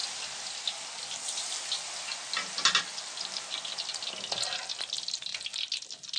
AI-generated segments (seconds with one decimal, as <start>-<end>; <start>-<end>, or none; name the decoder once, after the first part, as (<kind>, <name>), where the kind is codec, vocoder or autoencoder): none